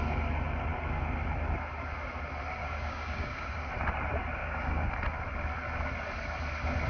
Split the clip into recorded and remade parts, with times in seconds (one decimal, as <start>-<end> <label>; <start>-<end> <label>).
0.0-2.6 recorded; 2.6-3.7 remade; 3.7-4.4 recorded; 4.4-4.9 remade; 4.9-6.9 recorded